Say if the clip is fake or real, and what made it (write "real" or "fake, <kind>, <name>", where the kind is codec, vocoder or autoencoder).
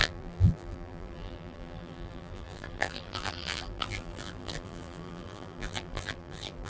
fake, vocoder, BigVGAN v2